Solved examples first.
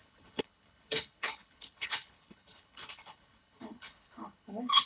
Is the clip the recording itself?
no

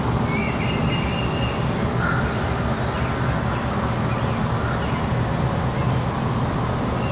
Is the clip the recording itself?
yes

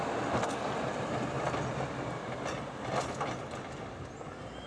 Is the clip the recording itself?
yes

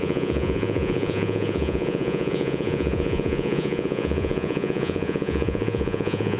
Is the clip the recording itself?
no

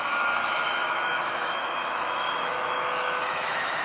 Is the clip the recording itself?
no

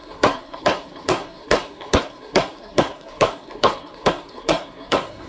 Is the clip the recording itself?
no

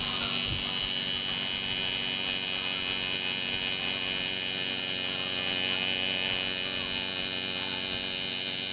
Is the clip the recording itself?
yes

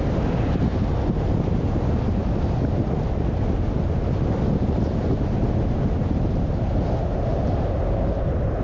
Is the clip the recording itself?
yes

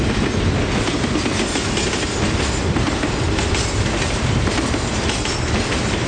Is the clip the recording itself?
yes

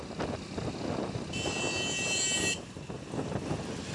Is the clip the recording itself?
yes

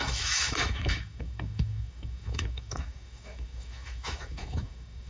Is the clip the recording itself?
no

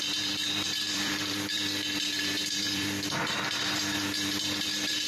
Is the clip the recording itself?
no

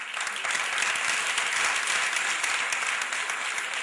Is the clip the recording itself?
yes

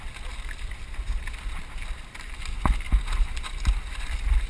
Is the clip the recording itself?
yes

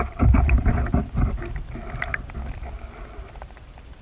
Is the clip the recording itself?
yes